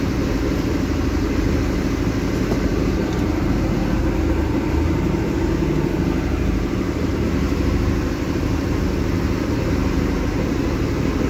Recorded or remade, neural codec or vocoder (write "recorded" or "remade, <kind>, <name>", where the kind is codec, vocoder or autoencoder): remade, vocoder, BigVGAN v2